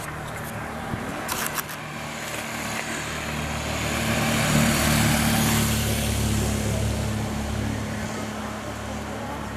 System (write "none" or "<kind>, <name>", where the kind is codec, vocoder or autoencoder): none